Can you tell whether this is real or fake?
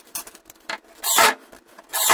fake